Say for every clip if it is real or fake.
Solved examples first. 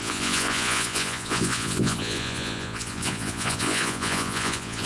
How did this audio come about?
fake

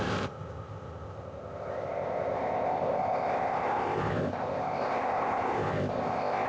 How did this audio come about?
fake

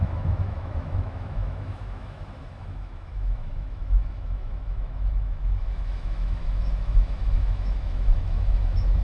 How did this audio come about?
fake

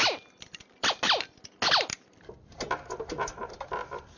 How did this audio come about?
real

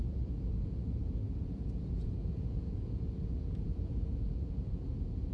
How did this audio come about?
fake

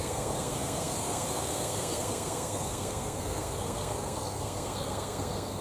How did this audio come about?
fake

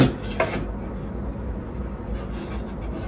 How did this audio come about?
real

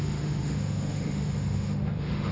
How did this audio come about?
fake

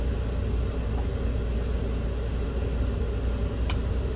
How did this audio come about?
real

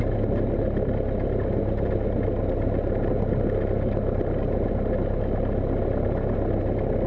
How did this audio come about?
real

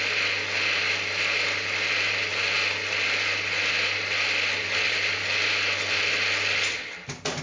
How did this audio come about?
real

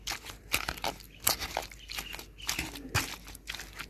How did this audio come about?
real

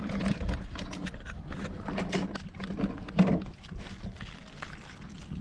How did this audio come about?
real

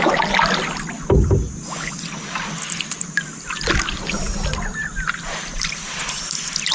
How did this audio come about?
real